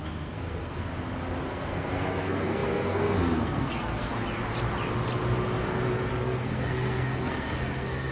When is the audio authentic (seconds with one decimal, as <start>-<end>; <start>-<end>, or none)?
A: 0.9-1.5; 4.1-6.1